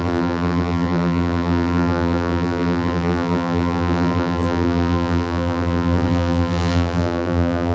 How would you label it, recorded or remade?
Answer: remade